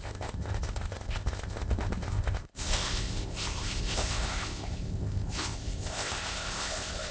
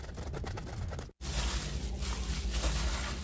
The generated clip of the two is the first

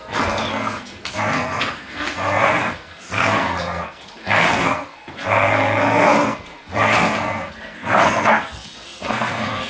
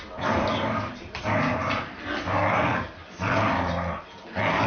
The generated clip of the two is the first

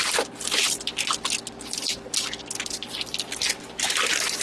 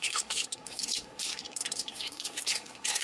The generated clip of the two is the second